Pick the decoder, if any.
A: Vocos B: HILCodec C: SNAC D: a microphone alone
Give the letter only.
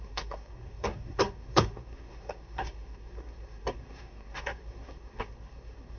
C